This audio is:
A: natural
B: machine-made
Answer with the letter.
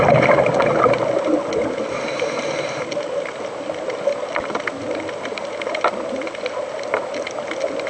A